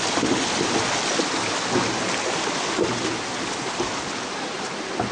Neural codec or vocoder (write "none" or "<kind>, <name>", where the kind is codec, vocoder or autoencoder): none